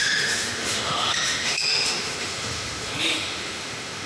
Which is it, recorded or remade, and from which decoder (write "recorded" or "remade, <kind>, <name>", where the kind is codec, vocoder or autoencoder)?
remade, autoencoder, DAC-VAE